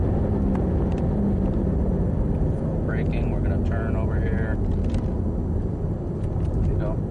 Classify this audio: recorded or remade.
recorded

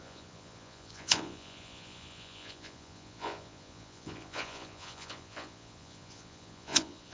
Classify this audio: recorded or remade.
remade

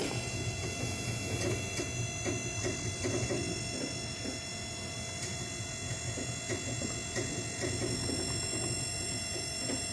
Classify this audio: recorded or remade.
recorded